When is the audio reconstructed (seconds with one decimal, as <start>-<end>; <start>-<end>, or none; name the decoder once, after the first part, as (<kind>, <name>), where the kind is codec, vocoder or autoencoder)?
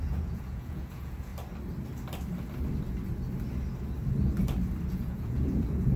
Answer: 0.0-1.3 (vocoder, Vocos); 4.9-6.0